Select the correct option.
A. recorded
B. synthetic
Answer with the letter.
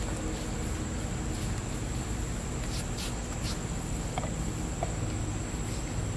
A